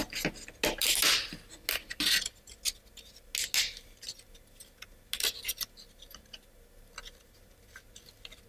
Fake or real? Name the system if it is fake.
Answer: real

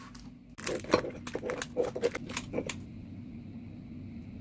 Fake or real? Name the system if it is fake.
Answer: real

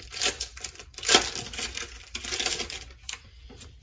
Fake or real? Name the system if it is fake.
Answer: real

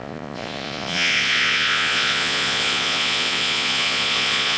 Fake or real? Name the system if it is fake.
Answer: fake, vocoder, Vocos